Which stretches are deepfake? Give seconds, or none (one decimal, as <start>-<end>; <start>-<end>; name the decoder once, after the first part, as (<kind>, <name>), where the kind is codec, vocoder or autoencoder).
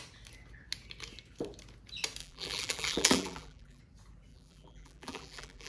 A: 2.2-3.8 (vocoder, BigVGAN v2); 4.3-5.7